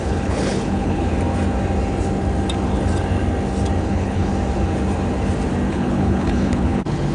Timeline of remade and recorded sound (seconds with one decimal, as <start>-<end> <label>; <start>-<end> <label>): 0.0-1.1 remade; 1.1-3.8 recorded; 3.8-4.3 remade; 4.3-5.7 recorded; 5.7-7.1 remade